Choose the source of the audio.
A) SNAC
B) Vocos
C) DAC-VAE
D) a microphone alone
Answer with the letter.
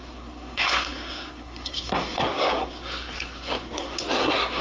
A